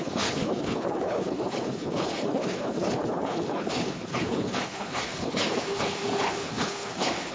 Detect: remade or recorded remade